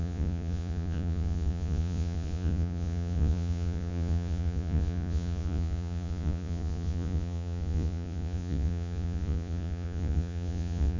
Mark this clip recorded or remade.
remade